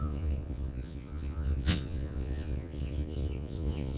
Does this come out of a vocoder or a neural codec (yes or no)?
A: yes